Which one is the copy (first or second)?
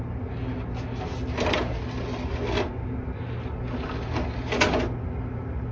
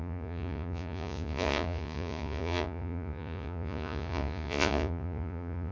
second